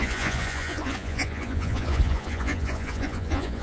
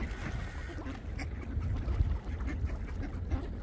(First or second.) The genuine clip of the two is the second